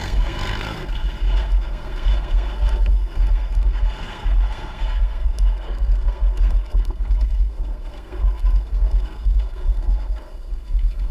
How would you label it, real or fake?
fake